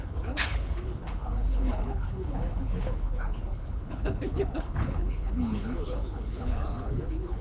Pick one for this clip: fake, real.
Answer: fake